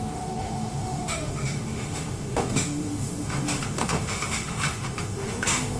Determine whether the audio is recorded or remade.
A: remade